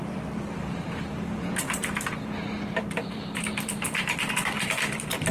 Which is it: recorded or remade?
remade